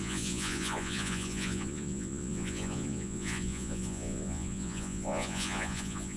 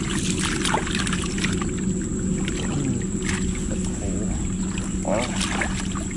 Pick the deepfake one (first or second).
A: first